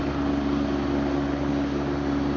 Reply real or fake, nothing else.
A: real